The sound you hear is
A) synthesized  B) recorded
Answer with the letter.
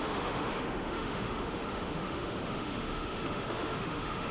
A